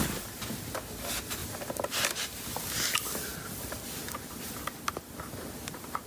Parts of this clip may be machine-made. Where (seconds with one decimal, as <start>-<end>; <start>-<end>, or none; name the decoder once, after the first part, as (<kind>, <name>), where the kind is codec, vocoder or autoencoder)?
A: none

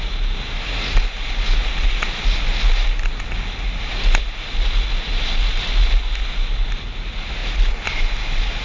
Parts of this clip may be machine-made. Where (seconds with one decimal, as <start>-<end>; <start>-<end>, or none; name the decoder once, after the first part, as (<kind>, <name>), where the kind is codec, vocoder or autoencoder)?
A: none

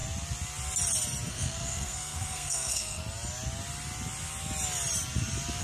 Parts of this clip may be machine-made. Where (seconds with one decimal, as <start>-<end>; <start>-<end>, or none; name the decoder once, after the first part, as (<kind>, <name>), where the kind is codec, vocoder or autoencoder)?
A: 1.3-3.0 (codec, SNAC)

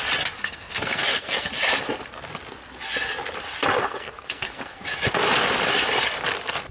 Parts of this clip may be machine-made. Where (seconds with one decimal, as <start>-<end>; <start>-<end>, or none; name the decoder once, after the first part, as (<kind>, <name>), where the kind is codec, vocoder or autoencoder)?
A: 0.4-1.5 (codec, SNAC); 3.8-4.8

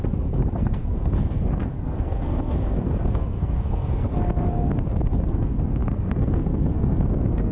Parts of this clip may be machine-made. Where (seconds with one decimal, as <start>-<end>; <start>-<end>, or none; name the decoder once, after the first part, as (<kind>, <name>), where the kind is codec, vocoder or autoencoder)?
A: 0.0-7.5 (codec, SNAC)

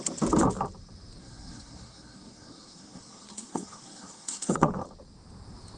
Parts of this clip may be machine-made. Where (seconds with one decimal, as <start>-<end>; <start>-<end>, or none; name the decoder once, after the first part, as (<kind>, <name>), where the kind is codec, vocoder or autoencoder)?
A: 1.2-4.7 (codec, SNAC)

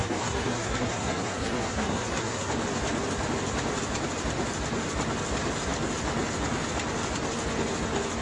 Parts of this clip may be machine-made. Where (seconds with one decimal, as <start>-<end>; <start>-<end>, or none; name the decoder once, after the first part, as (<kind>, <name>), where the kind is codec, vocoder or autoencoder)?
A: 0.0-2.5 (codec, SNAC)